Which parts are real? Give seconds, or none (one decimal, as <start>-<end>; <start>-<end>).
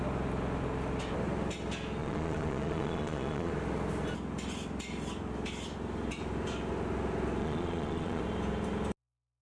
0.0-2.0; 3.5-7.4; 8.2-9.4